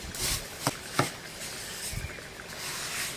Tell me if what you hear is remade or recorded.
recorded